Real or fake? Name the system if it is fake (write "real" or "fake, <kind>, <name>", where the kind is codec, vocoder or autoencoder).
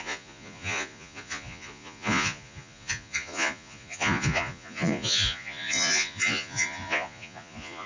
fake, vocoder, Vocos